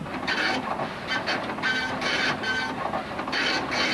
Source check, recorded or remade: recorded